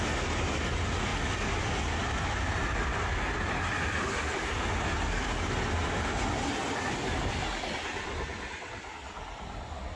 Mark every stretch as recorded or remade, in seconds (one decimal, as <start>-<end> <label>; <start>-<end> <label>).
0.0-10.0 recorded